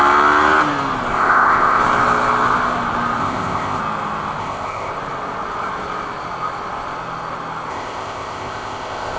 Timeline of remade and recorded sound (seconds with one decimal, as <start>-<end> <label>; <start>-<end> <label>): 0.0-1.1 recorded; 1.1-1.8 remade; 1.8-3.2 recorded; 3.2-3.8 remade; 3.8-4.4 recorded; 4.4-4.9 remade; 4.9-7.7 recorded; 7.7-9.2 remade